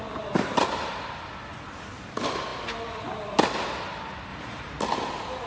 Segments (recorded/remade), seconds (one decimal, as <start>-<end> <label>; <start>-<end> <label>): 0.0-1.5 recorded; 1.5-2.1 remade; 2.1-4.3 recorded; 4.3-4.8 remade; 4.8-5.5 recorded